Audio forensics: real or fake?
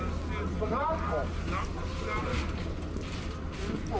real